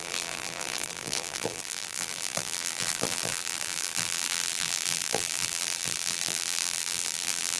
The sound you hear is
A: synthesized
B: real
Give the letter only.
A